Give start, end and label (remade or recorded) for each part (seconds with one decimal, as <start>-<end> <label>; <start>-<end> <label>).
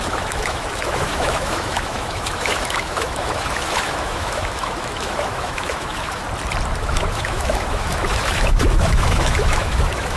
0.0-6.2 remade; 6.2-6.8 recorded; 6.8-10.2 remade